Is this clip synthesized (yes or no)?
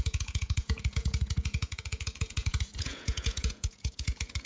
yes